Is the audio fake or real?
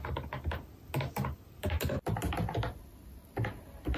real